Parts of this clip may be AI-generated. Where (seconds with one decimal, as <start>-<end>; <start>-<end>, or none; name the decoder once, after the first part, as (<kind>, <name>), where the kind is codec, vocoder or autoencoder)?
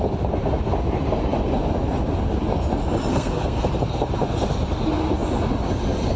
3.1-3.7 (codec, SNAC)